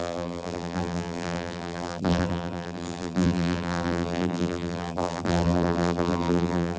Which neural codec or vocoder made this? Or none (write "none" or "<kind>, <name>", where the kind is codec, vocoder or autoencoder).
vocoder, BigVGAN v2